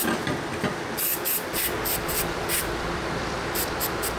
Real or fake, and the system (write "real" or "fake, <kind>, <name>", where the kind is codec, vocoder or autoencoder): fake, vocoder, BigVGAN v2